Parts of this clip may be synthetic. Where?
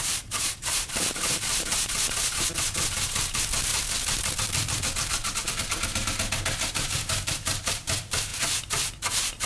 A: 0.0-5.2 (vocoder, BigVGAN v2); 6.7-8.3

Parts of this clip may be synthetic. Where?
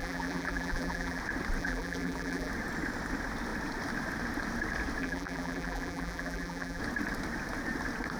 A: 0.0-1.2 (vocoder, BigVGAN v2); 1.6-2.5; 5.0-6.8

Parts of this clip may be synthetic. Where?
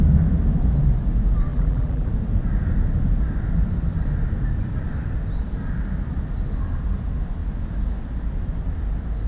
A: 1.5-2.1 (vocoder, BigVGAN v2)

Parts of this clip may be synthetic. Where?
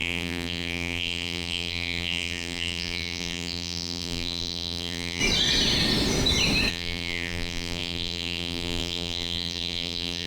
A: 0.0-5.2 (vocoder, BigVGAN v2); 6.7-10.3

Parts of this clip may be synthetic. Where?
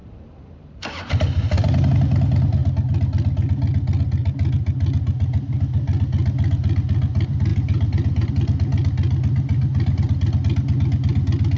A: 0.0-1.9 (vocoder, BigVGAN v2); 7.5-8.3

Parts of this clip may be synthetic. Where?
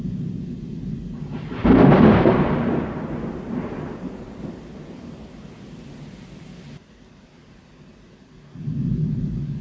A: 1.6-2.7 (vocoder, BigVGAN v2)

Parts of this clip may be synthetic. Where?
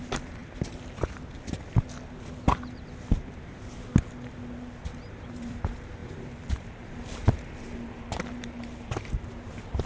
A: 0.0-0.4 (vocoder, BigVGAN v2); 5.3-9.9